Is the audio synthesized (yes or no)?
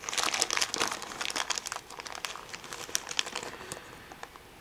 no